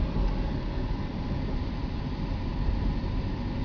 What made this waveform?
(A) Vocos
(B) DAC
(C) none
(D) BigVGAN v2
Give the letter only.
C